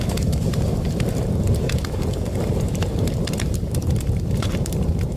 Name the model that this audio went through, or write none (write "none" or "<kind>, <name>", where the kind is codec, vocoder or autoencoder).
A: vocoder, BigVGAN v2